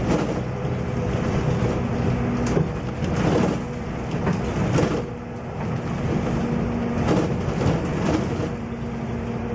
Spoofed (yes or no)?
no